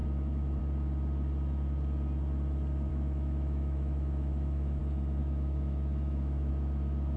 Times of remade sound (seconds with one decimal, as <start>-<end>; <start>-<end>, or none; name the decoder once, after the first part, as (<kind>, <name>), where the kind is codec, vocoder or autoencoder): 0.0-0.6 (autoencoder, DAC-VAE); 2.9-4.8; 5.2-6.5